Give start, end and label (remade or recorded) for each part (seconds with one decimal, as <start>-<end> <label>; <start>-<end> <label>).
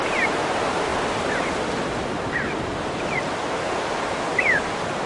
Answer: 0.0-0.9 remade; 0.9-2.8 recorded; 2.8-5.1 remade